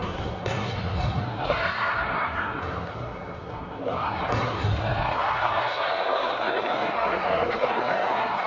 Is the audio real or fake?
fake